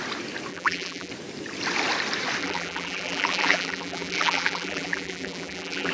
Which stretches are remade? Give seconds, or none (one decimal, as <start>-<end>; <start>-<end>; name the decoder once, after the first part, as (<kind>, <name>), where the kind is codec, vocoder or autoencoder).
0.5-1.1 (vocoder, BigVGAN v2); 2.4-5.9